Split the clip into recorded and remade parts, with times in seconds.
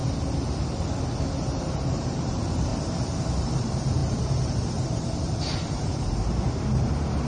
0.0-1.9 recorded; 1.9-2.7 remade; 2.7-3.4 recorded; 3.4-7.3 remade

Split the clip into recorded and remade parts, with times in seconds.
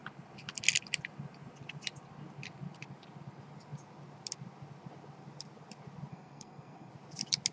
0.0-6.1 recorded; 6.1-6.9 remade; 6.9-7.5 recorded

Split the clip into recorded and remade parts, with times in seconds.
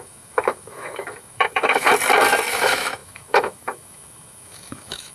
0.0-1.9 remade; 1.9-2.5 recorded; 2.5-5.1 remade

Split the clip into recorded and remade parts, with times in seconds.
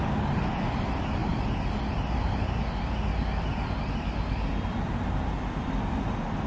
0.0-6.5 recorded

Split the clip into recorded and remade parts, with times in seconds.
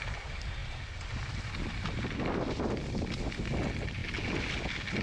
0.0-5.0 recorded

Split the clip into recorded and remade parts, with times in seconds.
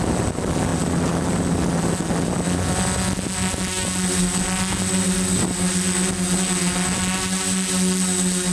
0.0-8.5 recorded